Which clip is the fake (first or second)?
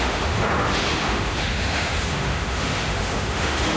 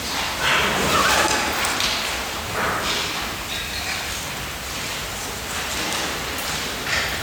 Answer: first